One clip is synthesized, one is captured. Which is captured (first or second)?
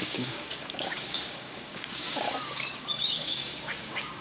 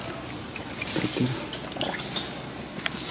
second